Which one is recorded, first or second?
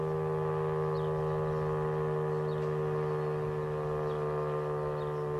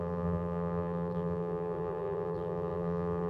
first